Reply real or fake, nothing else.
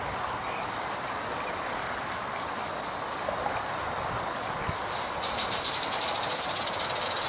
real